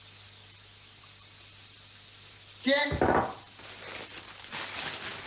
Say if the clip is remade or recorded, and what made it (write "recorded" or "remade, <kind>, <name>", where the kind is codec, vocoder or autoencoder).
recorded